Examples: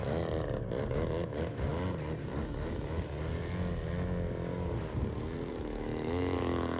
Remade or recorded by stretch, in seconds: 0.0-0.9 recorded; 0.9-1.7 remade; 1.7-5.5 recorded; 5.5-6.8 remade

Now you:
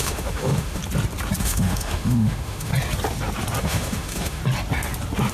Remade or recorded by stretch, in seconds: 0.0-0.8 remade; 0.8-1.4 recorded; 1.4-2.7 remade; 2.7-3.6 recorded; 3.6-4.4 remade; 4.4-5.3 recorded

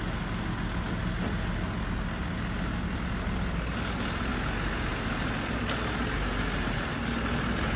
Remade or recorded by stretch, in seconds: 0.0-7.8 recorded

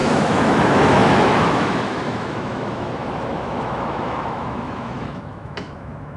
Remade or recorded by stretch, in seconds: 0.0-6.2 remade

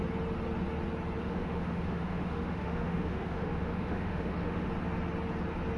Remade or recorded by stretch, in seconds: 0.0-1.2 recorded; 1.2-4.7 remade; 4.7-5.8 recorded

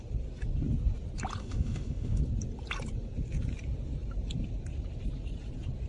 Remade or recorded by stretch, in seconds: 0.0-1.4 recorded; 1.4-2.2 remade; 2.2-5.9 recorded

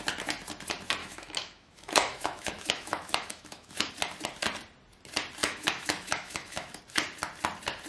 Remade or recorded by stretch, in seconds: 0.0-1.0 recorded; 1.0-3.9 remade; 3.9-5.4 recorded; 5.4-6.8 remade; 6.8-7.9 recorded